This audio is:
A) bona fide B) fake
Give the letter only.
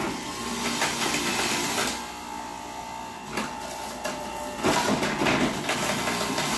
A